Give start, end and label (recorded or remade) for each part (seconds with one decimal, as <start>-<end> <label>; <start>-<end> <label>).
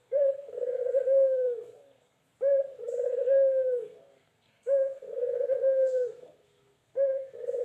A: 0.0-2.3 remade; 2.3-3.1 recorded; 3.1-7.6 remade